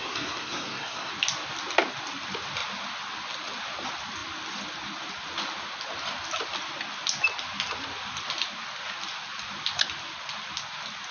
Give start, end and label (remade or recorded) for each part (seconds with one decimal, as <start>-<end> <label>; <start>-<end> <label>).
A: 0.0-1.1 remade; 1.1-11.1 recorded